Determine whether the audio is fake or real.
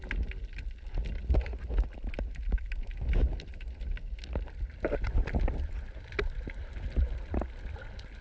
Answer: real